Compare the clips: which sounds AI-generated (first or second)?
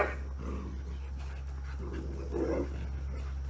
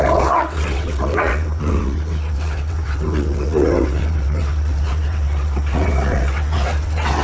second